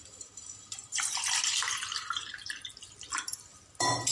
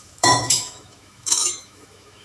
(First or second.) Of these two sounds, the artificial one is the second